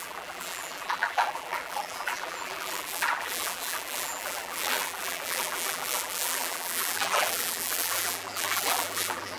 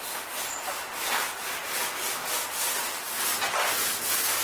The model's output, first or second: first